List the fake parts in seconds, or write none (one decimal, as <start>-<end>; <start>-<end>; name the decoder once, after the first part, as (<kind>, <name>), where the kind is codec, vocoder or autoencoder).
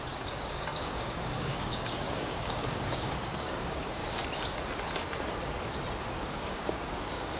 0.0-4.0 (codec, DAC); 6.1-7.4